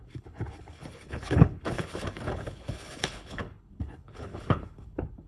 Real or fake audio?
fake